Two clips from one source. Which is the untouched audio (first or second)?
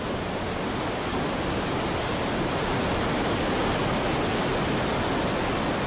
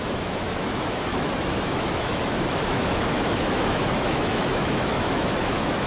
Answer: first